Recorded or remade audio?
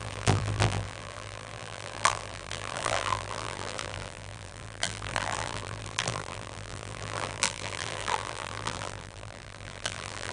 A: remade